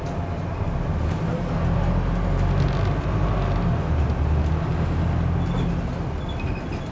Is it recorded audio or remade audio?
recorded